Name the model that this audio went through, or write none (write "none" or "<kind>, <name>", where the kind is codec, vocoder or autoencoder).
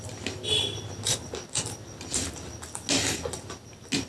none